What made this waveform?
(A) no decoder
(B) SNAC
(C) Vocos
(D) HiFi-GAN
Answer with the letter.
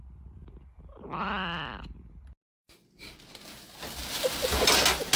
A